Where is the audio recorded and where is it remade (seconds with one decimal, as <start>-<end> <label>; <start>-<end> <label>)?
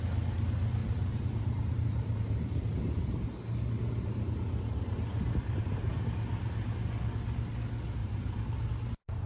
0.0-0.8 recorded; 0.8-3.4 remade; 3.4-5.0 recorded; 5.0-6.4 remade; 6.4-8.0 recorded; 8.0-8.7 remade; 8.7-9.3 recorded